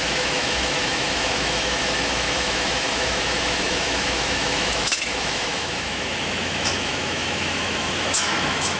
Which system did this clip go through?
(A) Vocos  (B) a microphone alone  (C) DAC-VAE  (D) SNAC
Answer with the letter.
C